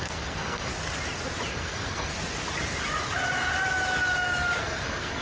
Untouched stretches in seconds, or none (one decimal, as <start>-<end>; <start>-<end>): 0.7-1.5; 2.1-4.6